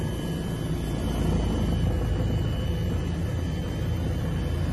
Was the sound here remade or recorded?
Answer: recorded